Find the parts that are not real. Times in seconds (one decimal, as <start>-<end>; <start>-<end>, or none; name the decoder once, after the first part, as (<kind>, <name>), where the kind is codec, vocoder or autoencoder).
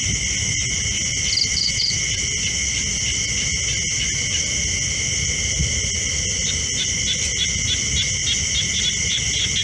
1.5-2.2 (vocoder, WaveNeXt)